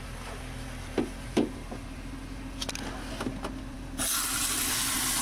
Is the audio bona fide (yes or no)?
yes